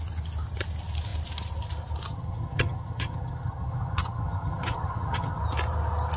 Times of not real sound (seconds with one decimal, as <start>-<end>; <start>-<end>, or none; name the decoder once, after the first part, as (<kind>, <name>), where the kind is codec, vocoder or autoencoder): 2.1-5.4 (vocoder, HiFi-GAN)